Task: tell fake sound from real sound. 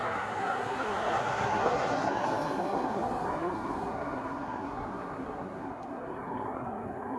fake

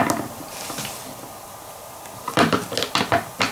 real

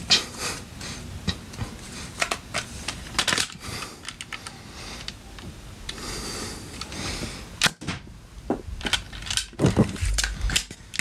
real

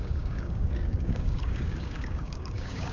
fake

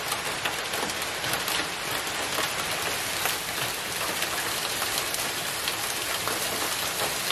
real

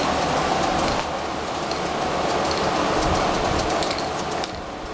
real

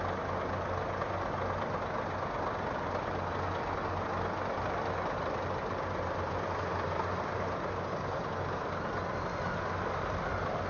real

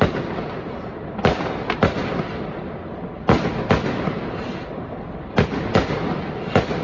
real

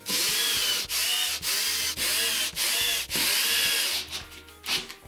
real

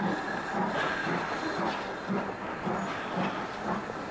real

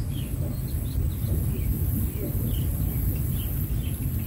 real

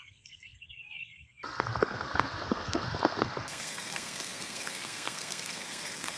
fake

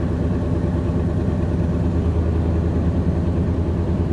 real